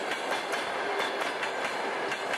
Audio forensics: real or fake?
real